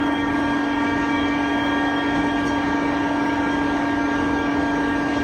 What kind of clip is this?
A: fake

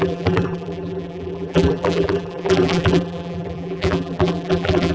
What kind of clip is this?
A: fake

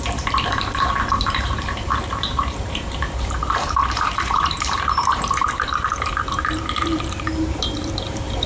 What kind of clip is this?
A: fake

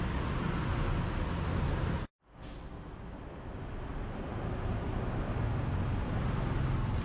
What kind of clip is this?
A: real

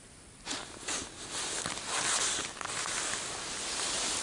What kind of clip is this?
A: real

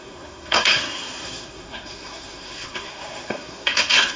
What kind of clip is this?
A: fake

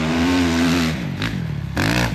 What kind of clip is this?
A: real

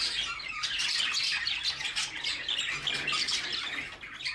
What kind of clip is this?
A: real